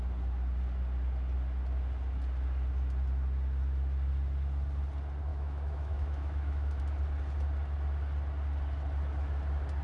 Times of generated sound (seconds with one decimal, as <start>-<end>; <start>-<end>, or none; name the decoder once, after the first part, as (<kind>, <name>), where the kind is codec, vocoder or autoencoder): 5.3-6.8 (autoencoder, DAC-VAE)

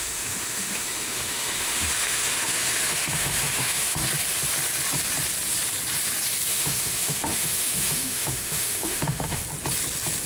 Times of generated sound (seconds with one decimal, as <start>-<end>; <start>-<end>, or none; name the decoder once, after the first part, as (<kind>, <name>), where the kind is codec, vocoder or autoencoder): 0.0-4.0 (autoencoder, DAC-VAE); 6.5-9.4

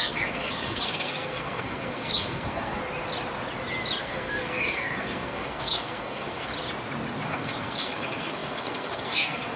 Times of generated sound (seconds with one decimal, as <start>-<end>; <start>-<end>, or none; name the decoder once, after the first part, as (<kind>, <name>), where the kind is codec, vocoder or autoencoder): 0.0-2.8 (codec, SNAC); 4.0-6.5; 7.3-9.6

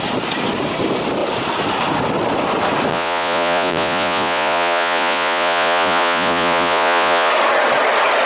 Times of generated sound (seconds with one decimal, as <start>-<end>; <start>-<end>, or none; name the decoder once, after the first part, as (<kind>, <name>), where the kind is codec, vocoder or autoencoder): 2.9-7.3 (vocoder, Vocos)